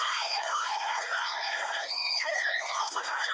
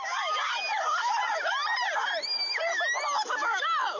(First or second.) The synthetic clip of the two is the first